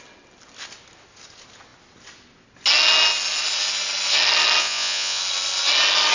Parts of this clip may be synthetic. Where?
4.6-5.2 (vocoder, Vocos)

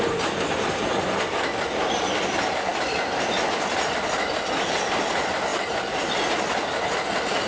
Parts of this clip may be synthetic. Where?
none